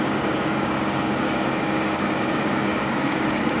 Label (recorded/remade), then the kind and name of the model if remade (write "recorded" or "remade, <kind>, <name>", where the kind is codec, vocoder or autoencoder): remade, codec, DAC